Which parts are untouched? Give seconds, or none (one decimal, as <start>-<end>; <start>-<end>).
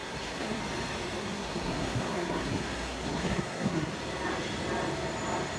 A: 0.6-1.2; 3.9-5.6